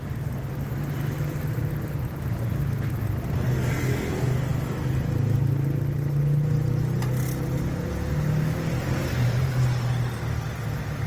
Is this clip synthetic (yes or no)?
no